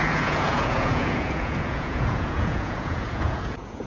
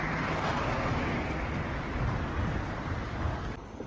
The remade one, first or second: first